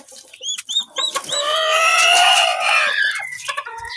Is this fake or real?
fake